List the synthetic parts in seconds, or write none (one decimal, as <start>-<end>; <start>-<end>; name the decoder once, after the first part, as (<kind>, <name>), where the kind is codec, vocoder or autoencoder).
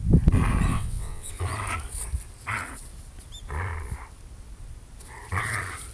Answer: 0.7-1.3 (vocoder, WaveNeXt)